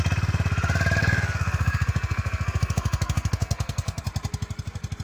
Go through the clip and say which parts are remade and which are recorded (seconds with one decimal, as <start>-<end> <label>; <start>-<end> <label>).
0.0-1.0 recorded; 1.0-4.0 remade; 4.0-5.0 recorded